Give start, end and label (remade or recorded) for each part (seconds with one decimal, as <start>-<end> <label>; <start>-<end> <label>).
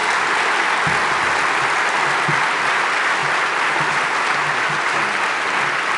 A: 0.0-6.0 recorded